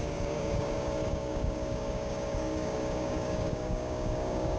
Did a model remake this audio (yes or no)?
yes